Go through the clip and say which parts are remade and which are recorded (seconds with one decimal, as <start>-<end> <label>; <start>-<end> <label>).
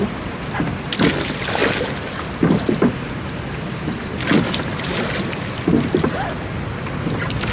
0.0-7.5 recorded